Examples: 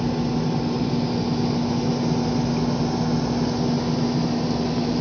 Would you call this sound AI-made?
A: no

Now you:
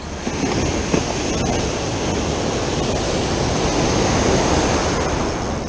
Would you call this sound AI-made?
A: no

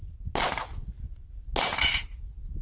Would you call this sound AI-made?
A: no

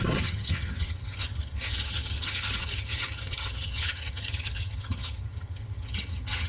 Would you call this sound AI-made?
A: yes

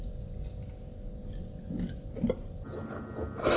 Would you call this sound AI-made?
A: no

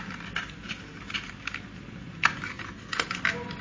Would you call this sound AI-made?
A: no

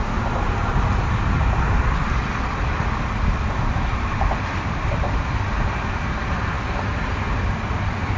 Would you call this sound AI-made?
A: no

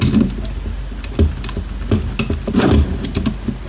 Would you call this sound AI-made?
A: no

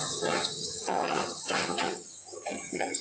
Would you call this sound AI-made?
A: yes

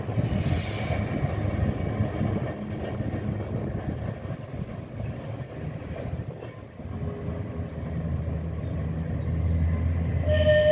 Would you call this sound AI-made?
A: no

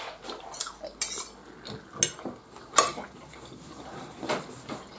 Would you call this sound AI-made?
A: no